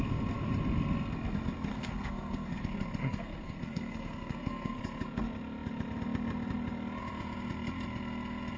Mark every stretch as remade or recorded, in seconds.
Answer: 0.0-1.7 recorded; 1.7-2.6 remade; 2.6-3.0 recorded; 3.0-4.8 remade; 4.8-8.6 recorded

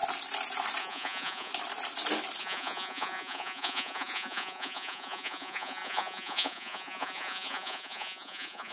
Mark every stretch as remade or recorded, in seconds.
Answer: 0.0-0.8 recorded; 0.8-1.5 remade; 1.5-2.4 recorded; 2.4-8.7 remade

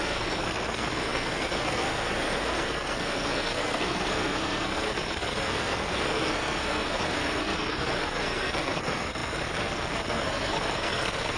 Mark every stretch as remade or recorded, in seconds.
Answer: 0.0-11.4 remade

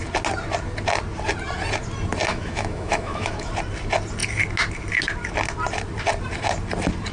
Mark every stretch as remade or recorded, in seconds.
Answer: 0.0-2.3 recorded; 2.3-3.5 remade; 3.5-7.1 recorded